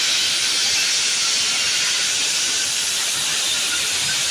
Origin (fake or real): real